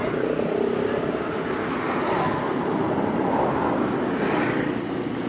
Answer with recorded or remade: recorded